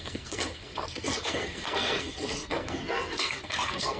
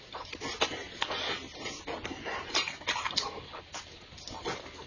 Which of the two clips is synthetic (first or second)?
first